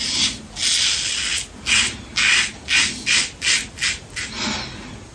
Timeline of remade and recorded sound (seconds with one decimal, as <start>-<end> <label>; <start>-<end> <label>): 0.0-5.1 recorded